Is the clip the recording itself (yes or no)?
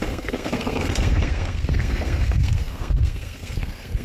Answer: no